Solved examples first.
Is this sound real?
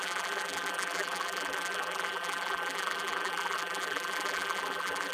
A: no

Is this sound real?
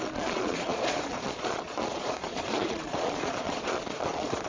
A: no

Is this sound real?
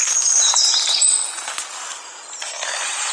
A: yes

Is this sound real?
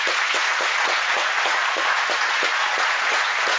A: no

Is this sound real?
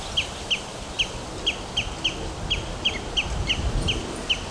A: yes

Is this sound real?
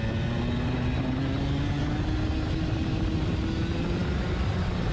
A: yes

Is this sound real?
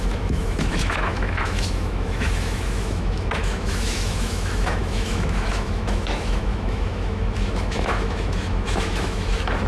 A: no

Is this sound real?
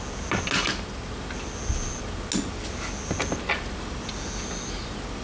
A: yes